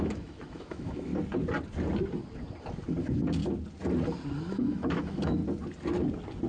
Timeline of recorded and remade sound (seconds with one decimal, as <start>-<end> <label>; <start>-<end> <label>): 0.0-1.1 remade; 1.1-3.0 recorded; 3.0-3.4 remade; 3.4-4.5 recorded; 4.5-5.4 remade; 5.4-6.5 recorded